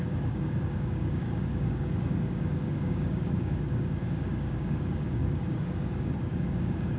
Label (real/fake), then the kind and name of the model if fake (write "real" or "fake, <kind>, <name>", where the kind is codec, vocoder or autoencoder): fake, codec, DAC